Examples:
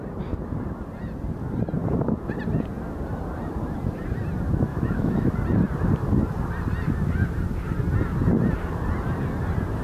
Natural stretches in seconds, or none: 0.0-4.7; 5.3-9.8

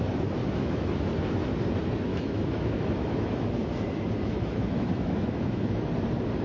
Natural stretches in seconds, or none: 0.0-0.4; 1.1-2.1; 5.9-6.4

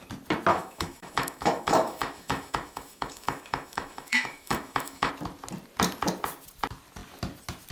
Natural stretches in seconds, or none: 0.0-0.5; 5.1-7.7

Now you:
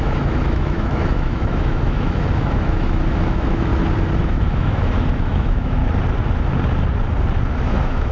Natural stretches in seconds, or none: 3.7-4.2; 5.8-7.6

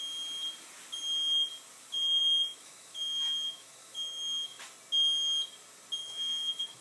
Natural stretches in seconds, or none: 0.0-2.5; 4.6-6.0

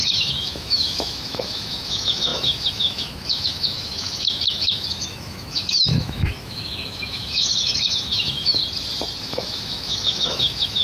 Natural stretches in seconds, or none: 8.6-9.2